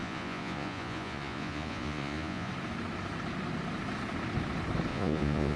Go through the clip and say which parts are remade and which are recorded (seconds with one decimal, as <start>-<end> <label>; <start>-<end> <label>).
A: 0.0-2.5 remade; 2.5-4.9 recorded; 4.9-5.6 remade